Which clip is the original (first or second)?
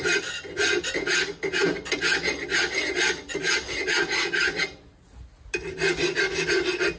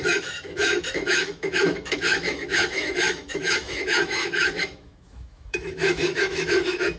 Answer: first